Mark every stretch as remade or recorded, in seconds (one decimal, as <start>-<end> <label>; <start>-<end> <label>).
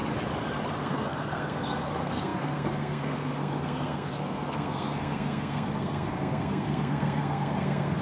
0.0-0.8 recorded; 0.8-8.0 remade